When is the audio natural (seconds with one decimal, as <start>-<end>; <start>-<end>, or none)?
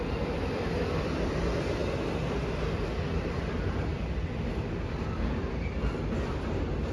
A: 0.0-6.9